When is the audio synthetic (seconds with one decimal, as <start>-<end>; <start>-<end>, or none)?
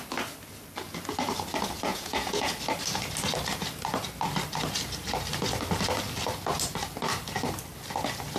1.9-2.5